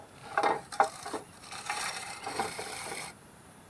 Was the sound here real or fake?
fake